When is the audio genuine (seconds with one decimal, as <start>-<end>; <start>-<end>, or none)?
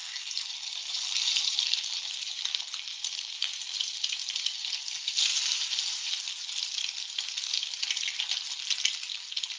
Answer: 2.4-2.9; 3.5-5.3; 6.2-9.6